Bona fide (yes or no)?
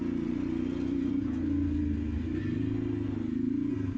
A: yes